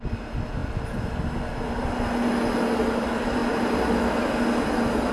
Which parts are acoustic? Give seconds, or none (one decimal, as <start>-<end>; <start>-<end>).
0.0-5.1